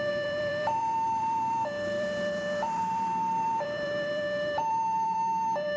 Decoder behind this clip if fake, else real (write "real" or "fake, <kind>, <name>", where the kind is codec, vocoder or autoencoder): fake, vocoder, BigVGAN v2